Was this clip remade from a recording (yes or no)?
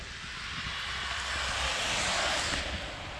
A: no